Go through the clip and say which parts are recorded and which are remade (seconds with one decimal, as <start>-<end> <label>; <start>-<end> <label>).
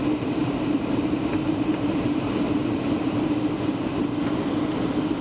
0.0-0.4 recorded; 0.4-3.5 remade; 3.5-5.2 recorded